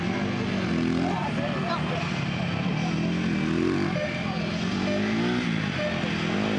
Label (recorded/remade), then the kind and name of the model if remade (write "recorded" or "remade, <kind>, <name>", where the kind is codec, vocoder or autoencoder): recorded